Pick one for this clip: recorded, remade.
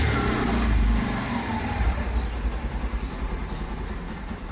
remade